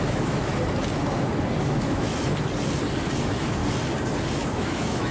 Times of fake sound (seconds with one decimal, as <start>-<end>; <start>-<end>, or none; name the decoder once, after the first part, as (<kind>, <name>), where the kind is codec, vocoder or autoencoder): 0.0-0.5 (autoencoder, DAC-VAE); 1.6-2.1; 3.2-3.6; 4.5-5.1